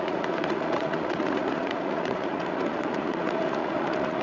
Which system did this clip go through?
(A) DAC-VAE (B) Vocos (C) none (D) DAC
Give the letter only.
B